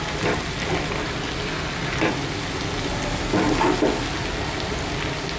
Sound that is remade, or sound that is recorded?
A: recorded